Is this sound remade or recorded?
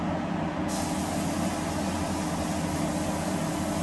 recorded